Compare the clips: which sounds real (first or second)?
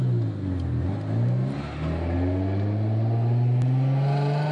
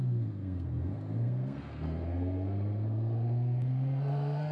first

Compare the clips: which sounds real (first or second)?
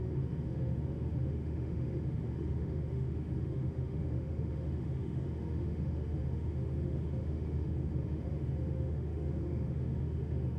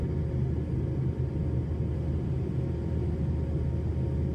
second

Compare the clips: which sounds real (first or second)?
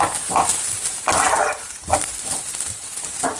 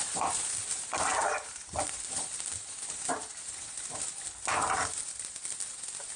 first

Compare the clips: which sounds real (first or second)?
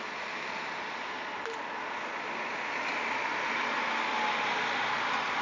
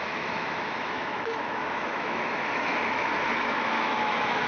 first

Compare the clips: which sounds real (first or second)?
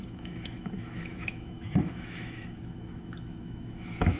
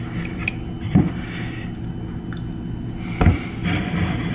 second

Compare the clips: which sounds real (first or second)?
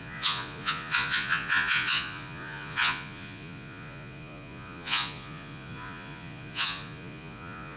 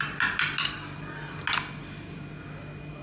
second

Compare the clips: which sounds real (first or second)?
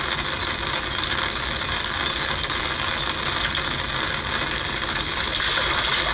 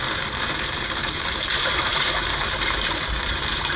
first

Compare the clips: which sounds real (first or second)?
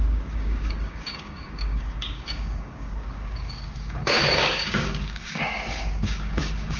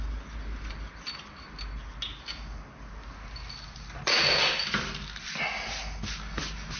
second